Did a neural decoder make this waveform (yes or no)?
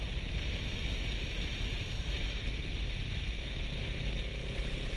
no